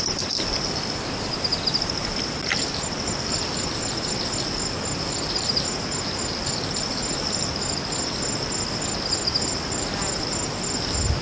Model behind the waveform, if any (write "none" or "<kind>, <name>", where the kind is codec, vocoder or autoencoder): none